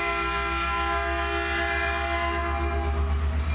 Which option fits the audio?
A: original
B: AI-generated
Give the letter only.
A